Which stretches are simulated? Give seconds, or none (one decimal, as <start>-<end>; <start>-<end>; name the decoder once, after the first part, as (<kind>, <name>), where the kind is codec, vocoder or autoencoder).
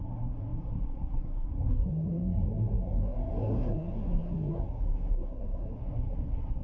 0.0-6.6 (codec, SNAC)